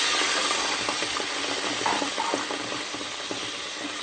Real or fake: real